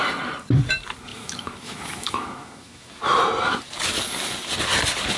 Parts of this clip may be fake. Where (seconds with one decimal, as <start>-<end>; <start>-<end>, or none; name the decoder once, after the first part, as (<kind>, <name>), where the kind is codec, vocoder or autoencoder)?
1.1-3.0 (autoencoder, DAC-VAE)